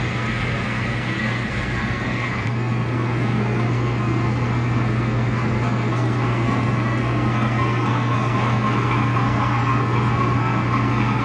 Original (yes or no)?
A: no